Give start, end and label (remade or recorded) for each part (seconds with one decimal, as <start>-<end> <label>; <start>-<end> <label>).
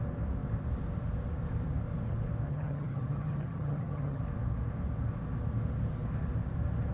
0.0-2.5 recorded; 2.5-4.2 remade; 4.2-6.9 recorded